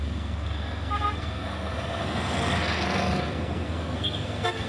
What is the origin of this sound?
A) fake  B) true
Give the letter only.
A